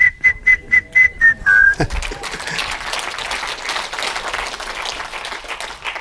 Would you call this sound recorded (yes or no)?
yes